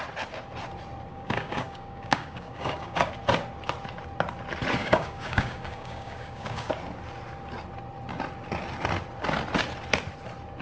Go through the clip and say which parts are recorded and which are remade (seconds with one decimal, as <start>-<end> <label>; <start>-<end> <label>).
0.0-1.1 recorded; 1.1-3.1 remade; 3.1-4.8 recorded; 4.8-6.7 remade; 6.7-10.6 recorded